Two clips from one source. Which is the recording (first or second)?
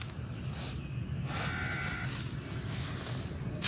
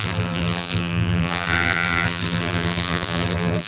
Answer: first